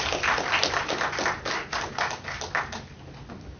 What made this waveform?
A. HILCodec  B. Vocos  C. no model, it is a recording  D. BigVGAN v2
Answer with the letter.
C